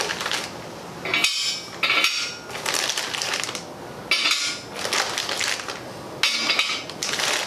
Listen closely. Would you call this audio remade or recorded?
recorded